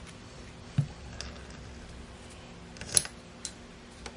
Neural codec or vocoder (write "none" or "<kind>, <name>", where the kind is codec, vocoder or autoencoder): none